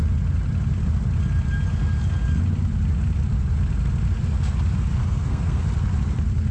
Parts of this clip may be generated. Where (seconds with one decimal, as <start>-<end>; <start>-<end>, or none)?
5.0-5.6

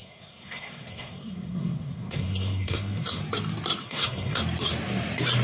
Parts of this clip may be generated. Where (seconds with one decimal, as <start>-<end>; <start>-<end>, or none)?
0.0-3.2; 3.8-4.4

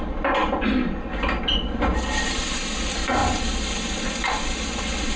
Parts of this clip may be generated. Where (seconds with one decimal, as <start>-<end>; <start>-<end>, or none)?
none

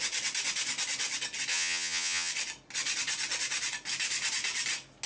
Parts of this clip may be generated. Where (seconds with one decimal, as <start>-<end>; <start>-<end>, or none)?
1.5-2.3